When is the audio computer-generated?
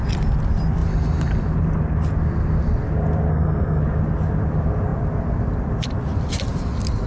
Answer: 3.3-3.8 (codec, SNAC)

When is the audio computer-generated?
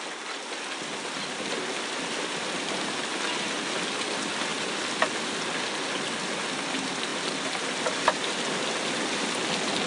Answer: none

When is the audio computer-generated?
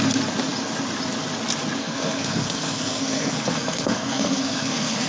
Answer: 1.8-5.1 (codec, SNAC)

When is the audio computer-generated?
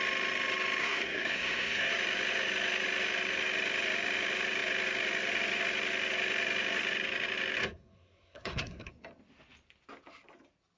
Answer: 0.8-1.9 (codec, SNAC); 7.6-8.9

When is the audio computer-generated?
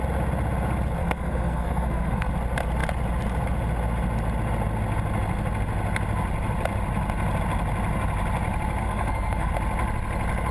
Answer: 1.0-2.3 (codec, SNAC); 8.8-9.5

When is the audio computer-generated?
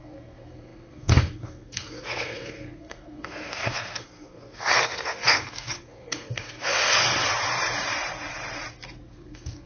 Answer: 0.0-7.0 (codec, SNAC); 9.1-9.7